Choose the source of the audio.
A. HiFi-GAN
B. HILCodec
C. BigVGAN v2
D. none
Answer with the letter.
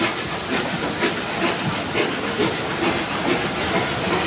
D